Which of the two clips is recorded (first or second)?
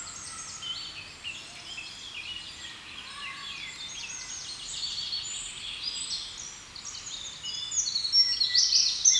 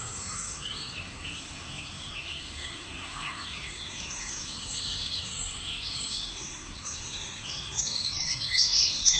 first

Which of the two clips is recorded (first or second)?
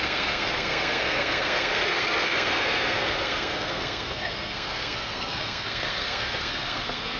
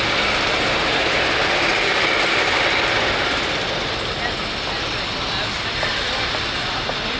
second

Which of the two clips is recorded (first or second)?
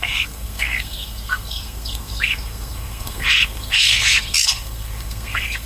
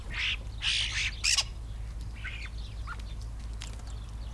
second